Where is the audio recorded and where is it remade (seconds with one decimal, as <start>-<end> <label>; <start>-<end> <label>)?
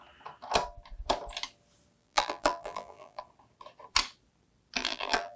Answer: 0.0-2.0 recorded; 2.0-3.2 remade; 3.2-4.8 recorded; 4.8-5.4 remade